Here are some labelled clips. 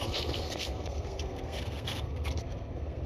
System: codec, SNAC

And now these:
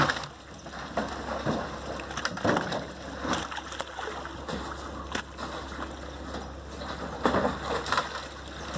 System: none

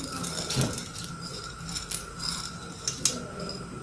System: none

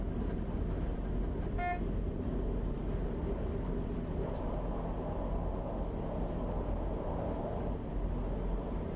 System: none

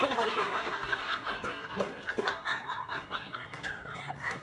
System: codec, SNAC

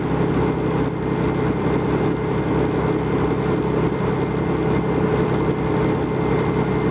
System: none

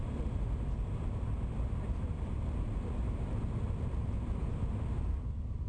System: none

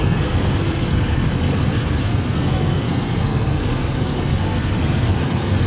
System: codec, SNAC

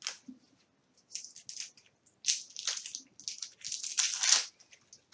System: none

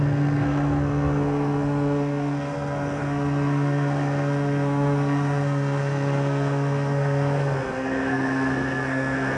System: codec, SNAC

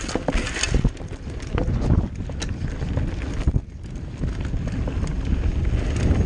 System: none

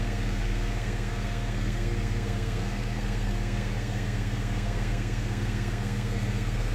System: codec, SNAC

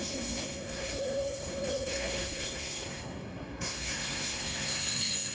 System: codec, SNAC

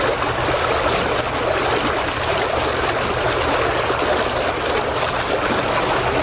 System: none